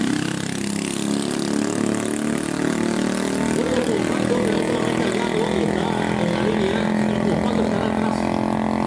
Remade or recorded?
recorded